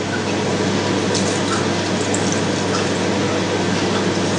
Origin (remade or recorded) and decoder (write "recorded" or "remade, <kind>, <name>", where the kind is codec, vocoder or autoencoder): recorded